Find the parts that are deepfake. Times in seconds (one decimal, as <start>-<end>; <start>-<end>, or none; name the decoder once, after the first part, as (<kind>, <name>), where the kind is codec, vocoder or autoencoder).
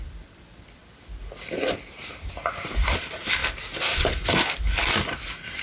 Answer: 0.0-3.4 (vocoder, BigVGAN v2)